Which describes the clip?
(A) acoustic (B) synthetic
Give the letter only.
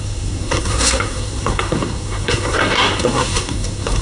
B